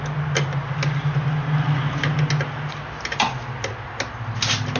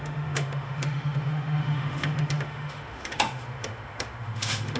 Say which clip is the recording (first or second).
first